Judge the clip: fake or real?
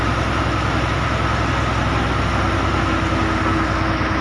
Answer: real